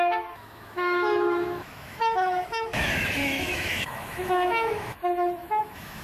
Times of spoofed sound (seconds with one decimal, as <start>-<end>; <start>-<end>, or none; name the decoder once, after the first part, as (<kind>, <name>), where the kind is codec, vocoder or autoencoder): 0.0-6.0 (autoencoder, DAC-VAE)